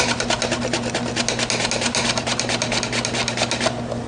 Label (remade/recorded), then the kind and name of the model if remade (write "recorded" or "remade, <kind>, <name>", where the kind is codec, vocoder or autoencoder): recorded